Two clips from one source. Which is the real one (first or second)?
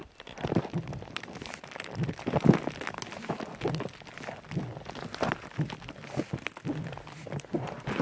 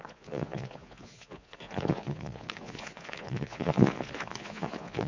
first